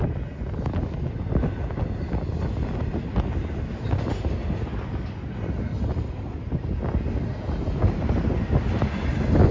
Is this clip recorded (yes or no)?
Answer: yes